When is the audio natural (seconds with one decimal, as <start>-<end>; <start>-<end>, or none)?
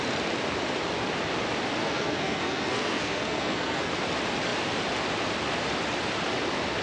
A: 0.0-1.8; 3.9-6.8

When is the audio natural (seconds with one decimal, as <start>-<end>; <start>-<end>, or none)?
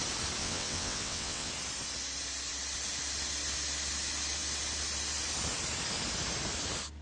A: 0.0-0.4; 1.5-7.0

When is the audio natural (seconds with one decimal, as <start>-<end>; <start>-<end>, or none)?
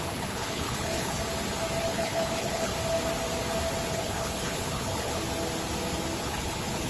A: 1.2-1.8; 2.7-3.9; 5.2-6.2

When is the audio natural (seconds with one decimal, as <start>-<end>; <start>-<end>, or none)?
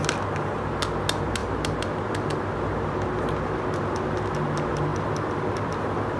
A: 0.0-4.9